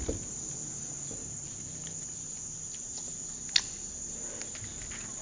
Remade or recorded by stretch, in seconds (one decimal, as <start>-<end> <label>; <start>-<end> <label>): 0.0-5.2 recorded